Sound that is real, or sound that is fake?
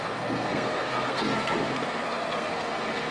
fake